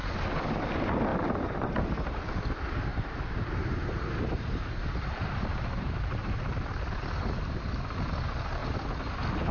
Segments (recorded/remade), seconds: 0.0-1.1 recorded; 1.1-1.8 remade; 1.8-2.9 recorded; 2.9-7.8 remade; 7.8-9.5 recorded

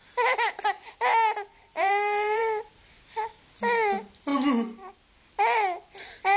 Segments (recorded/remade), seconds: 0.0-1.6 recorded; 1.6-2.4 remade; 2.4-6.4 recorded

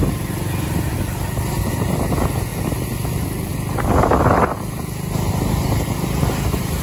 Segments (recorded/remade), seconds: 0.0-6.8 recorded

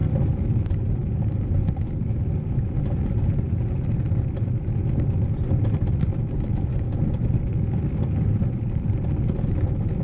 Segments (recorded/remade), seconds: 0.0-10.0 recorded

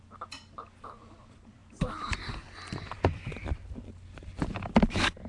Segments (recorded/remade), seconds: 0.0-5.3 recorded

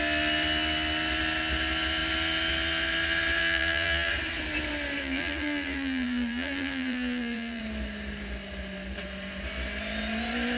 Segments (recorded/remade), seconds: 0.0-3.4 recorded; 3.4-4.1 remade; 4.1-5.0 recorded; 5.0-7.6 remade; 7.6-10.6 recorded